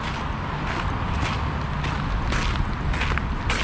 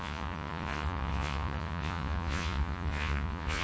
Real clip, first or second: first